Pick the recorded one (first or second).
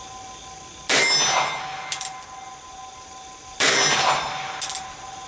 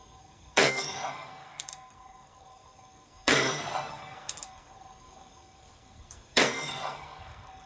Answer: first